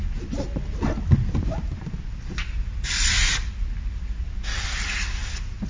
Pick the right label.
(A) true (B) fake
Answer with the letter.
A